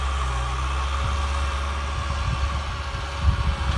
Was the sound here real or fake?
real